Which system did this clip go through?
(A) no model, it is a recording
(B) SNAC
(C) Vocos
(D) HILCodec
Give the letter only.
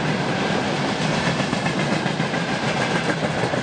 A